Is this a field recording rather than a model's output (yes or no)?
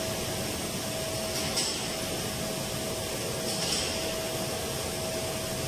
yes